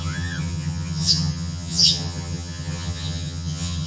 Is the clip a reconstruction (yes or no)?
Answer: yes